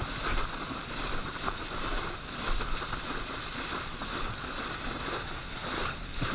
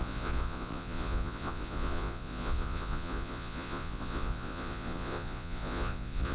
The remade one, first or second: second